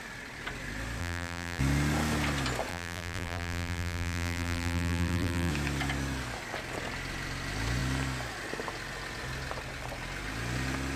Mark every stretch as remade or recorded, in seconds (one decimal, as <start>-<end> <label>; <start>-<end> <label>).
0.0-1.0 recorded; 1.0-1.6 remade; 1.6-2.7 recorded; 2.7-5.5 remade; 5.5-11.0 recorded